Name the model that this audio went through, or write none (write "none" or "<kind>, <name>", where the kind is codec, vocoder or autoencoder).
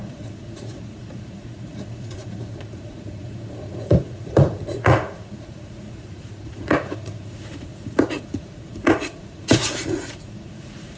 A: vocoder, Vocos